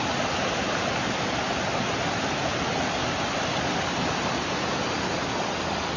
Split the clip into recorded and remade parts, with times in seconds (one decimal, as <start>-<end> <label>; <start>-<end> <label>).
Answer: 0.0-6.0 recorded

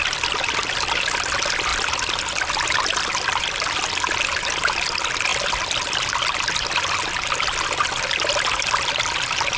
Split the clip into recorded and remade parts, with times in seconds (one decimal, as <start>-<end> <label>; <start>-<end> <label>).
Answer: 0.0-9.6 recorded

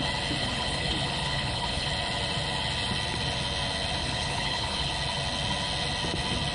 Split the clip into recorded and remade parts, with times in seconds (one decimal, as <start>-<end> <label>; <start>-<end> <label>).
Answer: 0.0-0.4 recorded; 0.4-1.9 remade; 1.9-4.0 recorded; 4.0-4.9 remade; 4.9-6.5 recorded

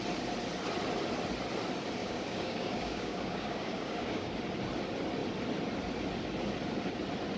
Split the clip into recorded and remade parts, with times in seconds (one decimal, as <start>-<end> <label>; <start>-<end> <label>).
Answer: 0.0-2.0 recorded; 2.0-4.3 remade; 4.3-7.4 recorded

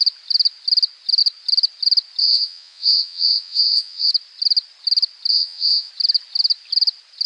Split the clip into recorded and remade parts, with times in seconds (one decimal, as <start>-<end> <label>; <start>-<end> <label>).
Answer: 0.0-2.2 recorded; 2.2-4.1 remade; 4.1-5.3 recorded; 5.3-5.9 remade; 5.9-7.3 recorded